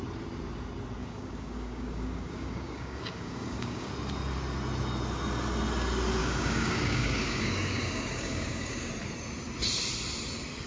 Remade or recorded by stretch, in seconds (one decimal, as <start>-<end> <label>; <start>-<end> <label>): 0.0-1.0 recorded; 1.0-3.9 remade; 3.9-6.2 recorded; 6.2-8.9 remade; 8.9-10.7 recorded